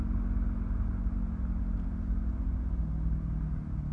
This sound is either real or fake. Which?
real